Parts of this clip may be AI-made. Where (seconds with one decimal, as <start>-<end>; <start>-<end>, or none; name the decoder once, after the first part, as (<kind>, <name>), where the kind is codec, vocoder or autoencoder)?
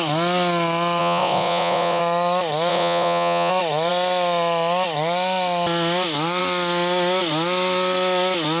1.0-2.0 (vocoder, Vocos); 2.7-3.5